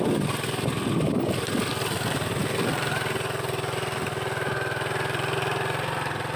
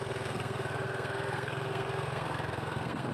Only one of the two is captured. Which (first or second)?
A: first